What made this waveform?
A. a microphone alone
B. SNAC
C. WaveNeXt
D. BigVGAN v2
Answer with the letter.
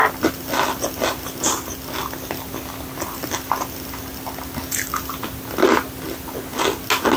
A